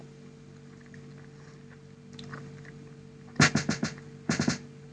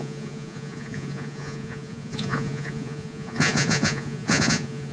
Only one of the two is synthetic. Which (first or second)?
second